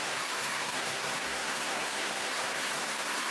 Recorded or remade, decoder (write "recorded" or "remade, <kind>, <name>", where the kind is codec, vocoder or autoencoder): remade, codec, SNAC